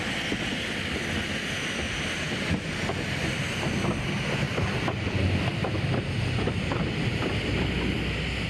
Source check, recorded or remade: recorded